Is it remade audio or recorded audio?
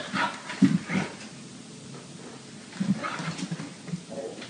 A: recorded